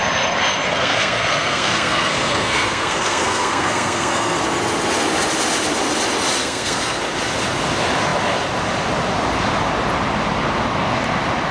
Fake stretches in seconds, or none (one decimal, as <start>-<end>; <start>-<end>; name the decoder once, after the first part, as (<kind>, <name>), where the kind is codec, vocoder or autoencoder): 0.7-4.4 (codec, SNAC); 6.4-7.0